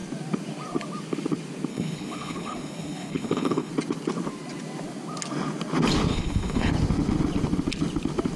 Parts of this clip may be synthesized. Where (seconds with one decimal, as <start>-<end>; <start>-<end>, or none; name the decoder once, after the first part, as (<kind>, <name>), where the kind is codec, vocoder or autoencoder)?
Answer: 1.7-3.7 (codec, HILCodec); 6.1-6.7